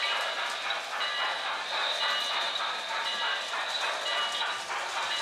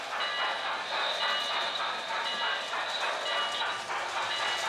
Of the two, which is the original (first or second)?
second